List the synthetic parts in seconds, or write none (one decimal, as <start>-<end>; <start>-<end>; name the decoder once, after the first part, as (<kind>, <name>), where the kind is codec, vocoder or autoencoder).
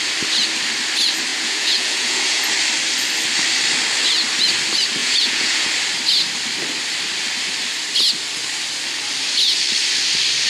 1.3-2.4 (vocoder, Vocos); 5.0-5.7